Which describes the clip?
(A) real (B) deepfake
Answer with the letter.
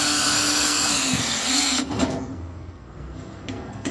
B